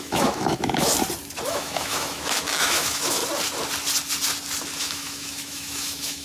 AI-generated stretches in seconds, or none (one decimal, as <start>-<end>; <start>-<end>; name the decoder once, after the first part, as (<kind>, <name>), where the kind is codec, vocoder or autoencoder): 0.0-0.9 (autoencoder, DAC-VAE); 1.5-3.2; 4.8-6.2

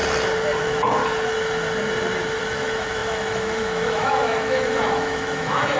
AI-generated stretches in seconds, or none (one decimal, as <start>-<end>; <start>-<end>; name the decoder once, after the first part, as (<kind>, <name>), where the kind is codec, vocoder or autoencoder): 0.6-1.0 (autoencoder, DAC-VAE); 2.4-5.8

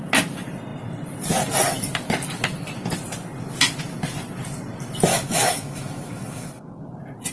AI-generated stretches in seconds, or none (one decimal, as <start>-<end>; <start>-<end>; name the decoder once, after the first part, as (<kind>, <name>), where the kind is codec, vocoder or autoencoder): 5.1-6.8 (autoencoder, DAC-VAE)